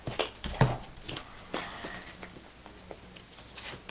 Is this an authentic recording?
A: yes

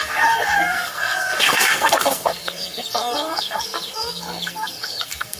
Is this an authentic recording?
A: no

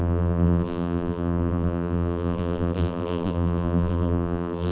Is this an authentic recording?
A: no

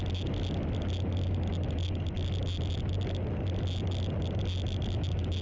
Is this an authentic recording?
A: yes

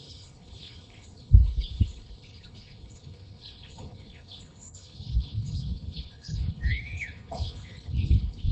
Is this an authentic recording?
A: no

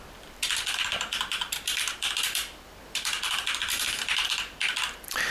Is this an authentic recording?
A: no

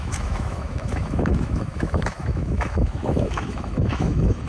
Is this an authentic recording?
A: no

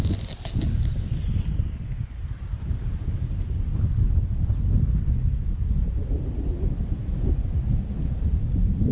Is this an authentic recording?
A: yes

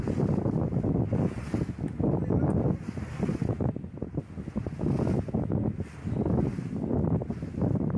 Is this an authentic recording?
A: yes